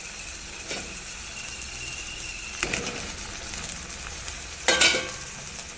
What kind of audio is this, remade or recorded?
recorded